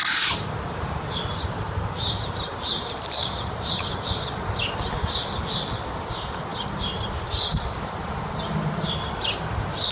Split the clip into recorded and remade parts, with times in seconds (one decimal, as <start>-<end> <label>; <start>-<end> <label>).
0.0-4.1 remade; 4.1-9.9 recorded